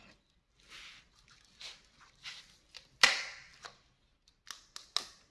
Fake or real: real